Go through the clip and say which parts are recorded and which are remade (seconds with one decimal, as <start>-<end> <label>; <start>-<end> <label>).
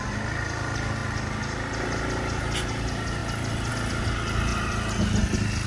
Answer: 0.0-5.7 recorded